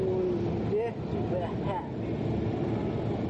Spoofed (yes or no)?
no